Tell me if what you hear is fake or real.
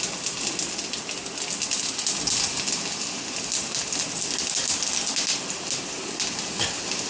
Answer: real